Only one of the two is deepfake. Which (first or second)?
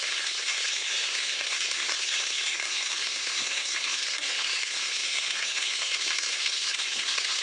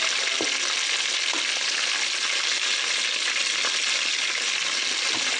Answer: first